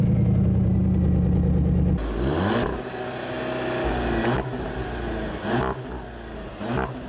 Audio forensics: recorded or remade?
recorded